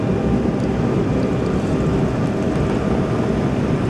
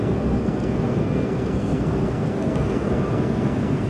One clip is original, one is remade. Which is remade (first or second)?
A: second